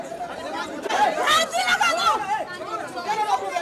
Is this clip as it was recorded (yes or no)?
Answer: no